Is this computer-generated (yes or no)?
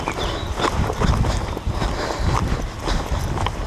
no